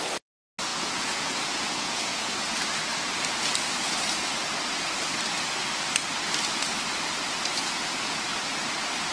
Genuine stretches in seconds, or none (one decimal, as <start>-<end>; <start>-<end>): 0.0-0.7; 2.3-7.6; 8.2-9.1